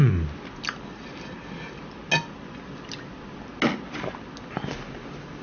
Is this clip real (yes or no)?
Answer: yes